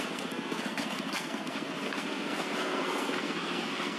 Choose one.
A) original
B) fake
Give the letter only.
B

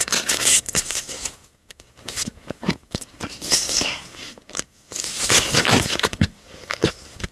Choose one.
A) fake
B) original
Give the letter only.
A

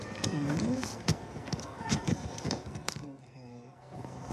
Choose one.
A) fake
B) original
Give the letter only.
A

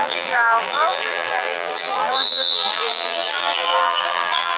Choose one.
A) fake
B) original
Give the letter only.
A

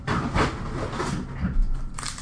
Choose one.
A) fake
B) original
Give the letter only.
B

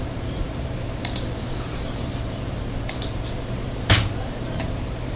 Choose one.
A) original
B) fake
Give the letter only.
B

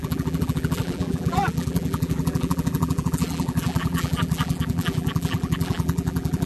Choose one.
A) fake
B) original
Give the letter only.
A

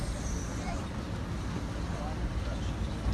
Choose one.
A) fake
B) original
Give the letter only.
B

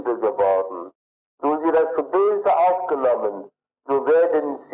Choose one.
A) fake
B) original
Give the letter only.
B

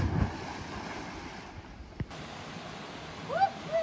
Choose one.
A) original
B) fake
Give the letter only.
A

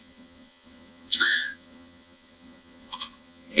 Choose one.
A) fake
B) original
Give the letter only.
A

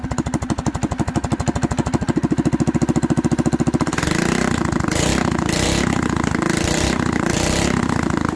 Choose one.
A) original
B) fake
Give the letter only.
A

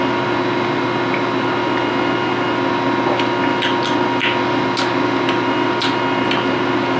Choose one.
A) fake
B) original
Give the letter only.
B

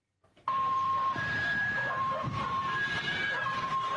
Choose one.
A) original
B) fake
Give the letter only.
B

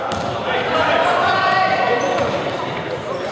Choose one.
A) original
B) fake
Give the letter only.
A